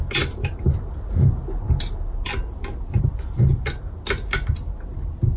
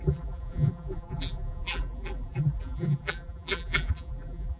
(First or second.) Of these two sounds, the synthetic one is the second